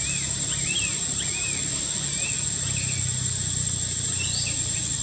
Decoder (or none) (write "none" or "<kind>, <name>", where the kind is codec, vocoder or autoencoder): none